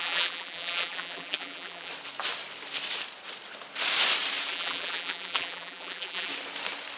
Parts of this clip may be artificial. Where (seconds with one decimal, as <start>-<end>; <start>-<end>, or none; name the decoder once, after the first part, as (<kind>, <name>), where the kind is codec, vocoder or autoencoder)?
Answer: 0.0-1.9 (vocoder, BigVGAN v2); 4.5-6.3